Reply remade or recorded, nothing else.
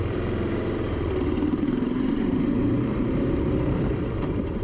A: remade